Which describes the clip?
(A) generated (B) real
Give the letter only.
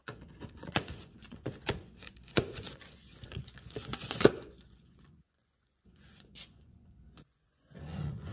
A